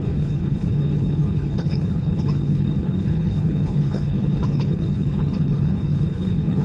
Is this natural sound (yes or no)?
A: no